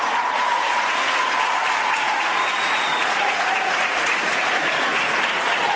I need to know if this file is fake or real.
fake